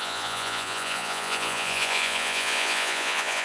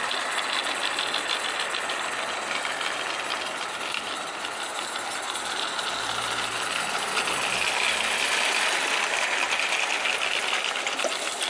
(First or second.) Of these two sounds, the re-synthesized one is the first